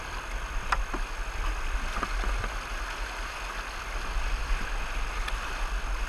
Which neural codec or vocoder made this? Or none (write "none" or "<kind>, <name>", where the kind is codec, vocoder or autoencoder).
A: none